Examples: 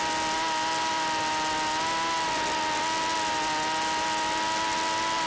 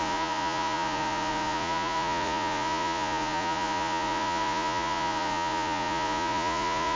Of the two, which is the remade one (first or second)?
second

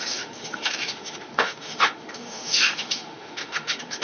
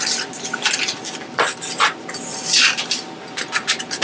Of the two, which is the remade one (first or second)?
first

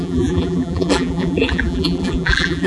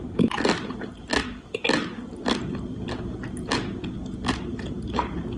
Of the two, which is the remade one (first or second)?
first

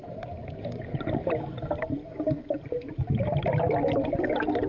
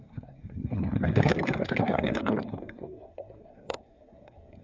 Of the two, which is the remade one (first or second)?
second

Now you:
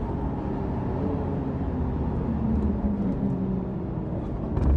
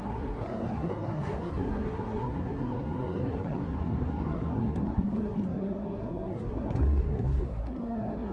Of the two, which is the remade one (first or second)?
second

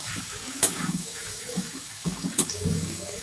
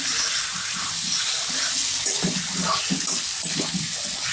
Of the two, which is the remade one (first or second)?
first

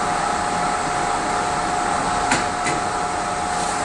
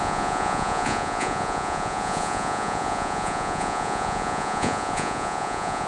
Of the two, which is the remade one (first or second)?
second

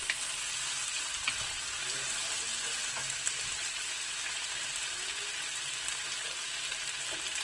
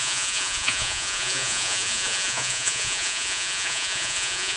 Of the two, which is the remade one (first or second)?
second